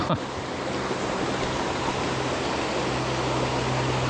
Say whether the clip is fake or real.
real